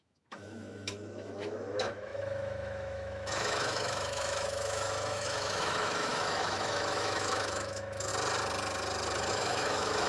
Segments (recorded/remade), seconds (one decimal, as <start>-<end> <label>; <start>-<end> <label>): 0.0-8.1 remade; 8.1-9.3 recorded; 9.3-10.1 remade

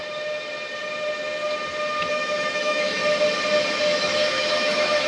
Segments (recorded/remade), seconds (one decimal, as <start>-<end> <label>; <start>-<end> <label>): 0.0-2.1 recorded; 2.1-3.0 remade; 3.0-3.8 recorded; 3.8-5.1 remade

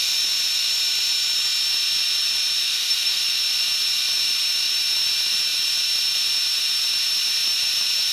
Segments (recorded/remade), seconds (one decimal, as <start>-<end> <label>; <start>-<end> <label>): 0.0-2.7 recorded; 2.7-3.2 remade; 3.2-8.1 recorded

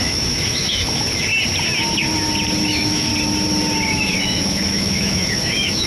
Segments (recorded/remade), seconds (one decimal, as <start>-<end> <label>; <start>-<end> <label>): 0.0-1.3 remade; 1.3-2.6 recorded; 2.6-3.1 remade; 3.1-3.9 recorded; 3.9-5.9 remade